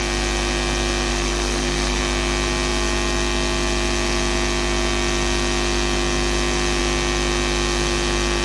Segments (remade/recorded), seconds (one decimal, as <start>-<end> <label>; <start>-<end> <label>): 0.0-1.1 recorded; 1.1-2.0 remade; 2.0-8.4 recorded